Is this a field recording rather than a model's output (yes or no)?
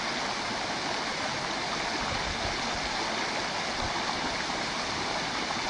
yes